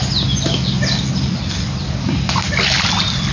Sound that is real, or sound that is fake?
real